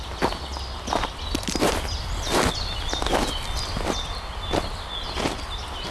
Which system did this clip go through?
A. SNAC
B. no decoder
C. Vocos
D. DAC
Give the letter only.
B